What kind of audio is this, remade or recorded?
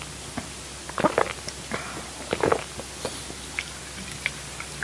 recorded